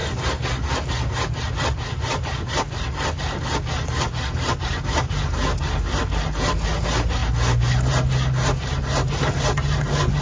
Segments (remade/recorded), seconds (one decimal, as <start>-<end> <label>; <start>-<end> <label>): 0.0-10.2 recorded